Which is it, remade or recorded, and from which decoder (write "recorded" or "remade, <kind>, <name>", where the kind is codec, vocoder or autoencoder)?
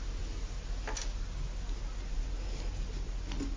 recorded